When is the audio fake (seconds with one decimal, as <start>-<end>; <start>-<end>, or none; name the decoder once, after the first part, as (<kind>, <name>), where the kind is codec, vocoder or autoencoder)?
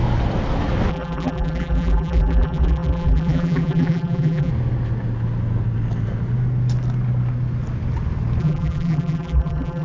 0.9-4.5 (vocoder, BigVGAN v2); 8.4-9.8